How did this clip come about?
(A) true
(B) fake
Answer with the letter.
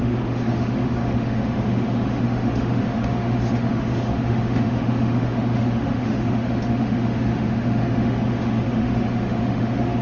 B